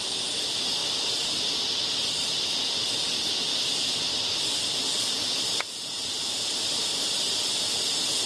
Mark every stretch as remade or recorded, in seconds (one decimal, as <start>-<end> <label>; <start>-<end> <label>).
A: 0.0-8.3 recorded